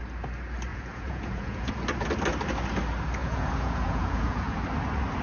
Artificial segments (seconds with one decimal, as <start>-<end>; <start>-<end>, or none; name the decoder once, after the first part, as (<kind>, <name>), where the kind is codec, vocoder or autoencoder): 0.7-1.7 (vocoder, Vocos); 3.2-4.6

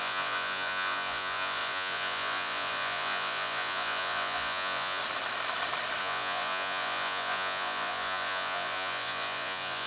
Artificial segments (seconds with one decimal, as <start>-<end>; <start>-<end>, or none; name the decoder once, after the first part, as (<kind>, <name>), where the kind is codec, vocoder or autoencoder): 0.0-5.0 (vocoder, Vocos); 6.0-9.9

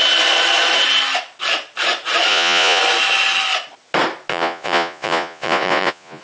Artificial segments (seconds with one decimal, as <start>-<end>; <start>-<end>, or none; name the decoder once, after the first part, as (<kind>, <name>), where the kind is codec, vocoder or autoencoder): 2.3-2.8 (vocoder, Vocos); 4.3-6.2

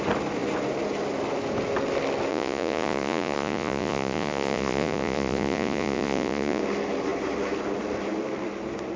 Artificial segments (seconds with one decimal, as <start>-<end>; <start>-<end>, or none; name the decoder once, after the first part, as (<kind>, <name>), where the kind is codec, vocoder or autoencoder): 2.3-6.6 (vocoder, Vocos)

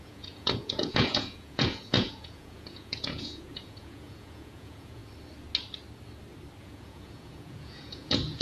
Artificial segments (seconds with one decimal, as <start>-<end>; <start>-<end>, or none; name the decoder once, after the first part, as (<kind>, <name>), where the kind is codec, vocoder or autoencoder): 0.0-5.0 (vocoder, Vocos); 6.6-8.4

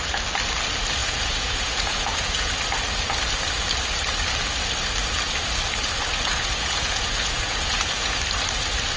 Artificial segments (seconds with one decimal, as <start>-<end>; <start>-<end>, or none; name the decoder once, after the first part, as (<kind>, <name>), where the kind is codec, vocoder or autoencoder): 1.0-2.5 (vocoder, Vocos); 6.3-8.2

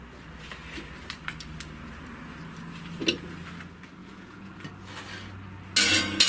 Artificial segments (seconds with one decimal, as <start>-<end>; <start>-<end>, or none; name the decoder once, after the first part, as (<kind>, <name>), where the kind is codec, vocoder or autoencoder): 4.0-4.5 (vocoder, Vocos)

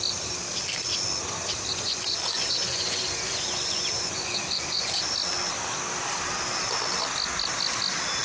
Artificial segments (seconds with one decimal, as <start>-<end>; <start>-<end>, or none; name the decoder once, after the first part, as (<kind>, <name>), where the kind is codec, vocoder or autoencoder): 1.7-5.1 (vocoder, Vocos)